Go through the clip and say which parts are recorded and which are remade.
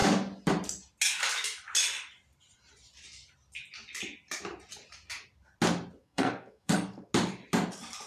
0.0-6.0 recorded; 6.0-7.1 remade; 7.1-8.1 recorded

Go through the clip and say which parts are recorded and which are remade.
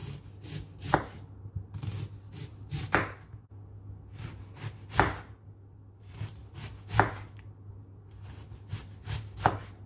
0.0-2.5 recorded; 2.5-3.0 remade; 3.0-9.9 recorded